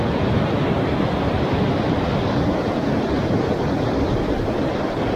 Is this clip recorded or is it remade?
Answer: recorded